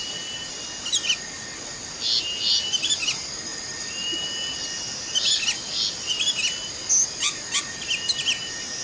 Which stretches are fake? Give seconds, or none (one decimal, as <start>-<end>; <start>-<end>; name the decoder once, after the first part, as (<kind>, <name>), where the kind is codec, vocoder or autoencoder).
none